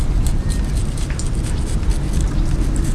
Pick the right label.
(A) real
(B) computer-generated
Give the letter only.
A